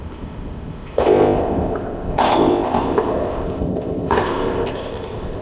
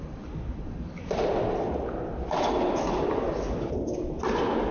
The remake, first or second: first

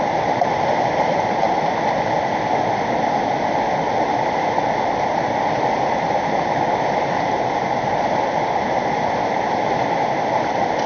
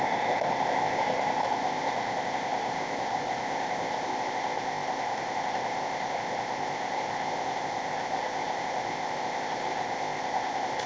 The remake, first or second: second